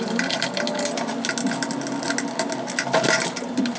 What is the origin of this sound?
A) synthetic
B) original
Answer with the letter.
B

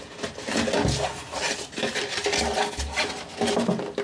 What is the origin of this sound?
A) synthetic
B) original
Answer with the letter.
B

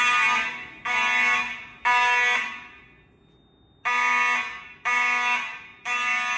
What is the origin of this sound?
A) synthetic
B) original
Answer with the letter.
B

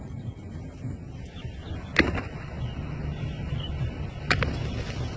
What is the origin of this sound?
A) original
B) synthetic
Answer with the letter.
A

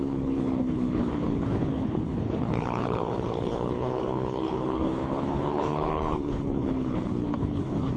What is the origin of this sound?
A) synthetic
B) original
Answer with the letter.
A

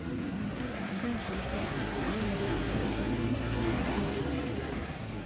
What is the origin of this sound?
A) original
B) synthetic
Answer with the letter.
B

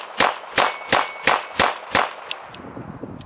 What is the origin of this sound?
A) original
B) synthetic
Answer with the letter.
A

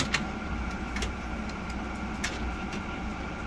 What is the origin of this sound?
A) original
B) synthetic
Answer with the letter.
A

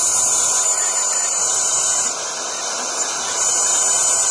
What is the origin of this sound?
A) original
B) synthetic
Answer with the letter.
A